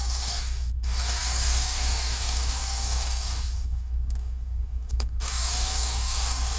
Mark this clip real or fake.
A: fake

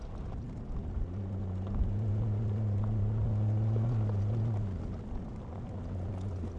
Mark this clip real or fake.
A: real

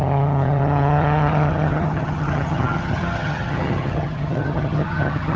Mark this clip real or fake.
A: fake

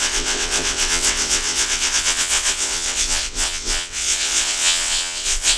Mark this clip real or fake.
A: fake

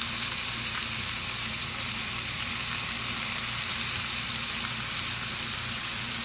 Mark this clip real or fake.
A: real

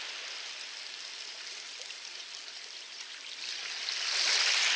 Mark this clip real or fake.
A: real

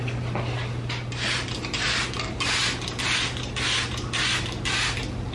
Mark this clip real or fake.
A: real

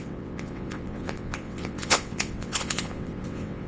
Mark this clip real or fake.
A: fake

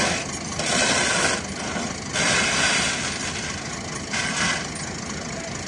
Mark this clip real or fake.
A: real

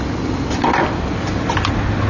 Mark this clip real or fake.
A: real